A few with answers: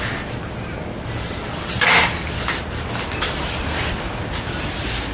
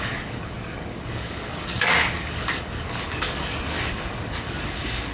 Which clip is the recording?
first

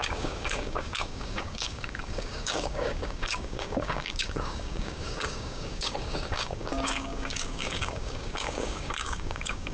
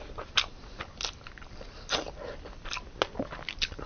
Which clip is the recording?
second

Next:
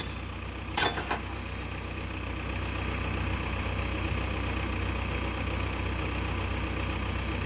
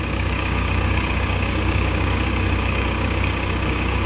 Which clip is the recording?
first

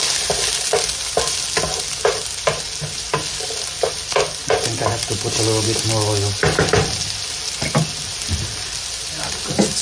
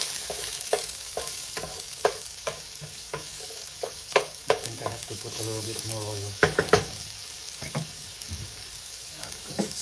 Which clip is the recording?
first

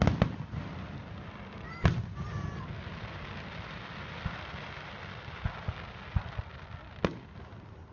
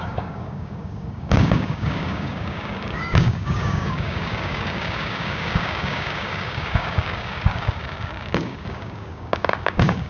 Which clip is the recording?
first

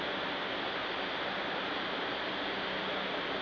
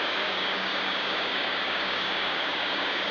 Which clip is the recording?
first